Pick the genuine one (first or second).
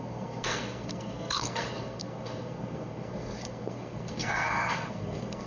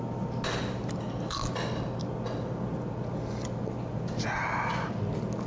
second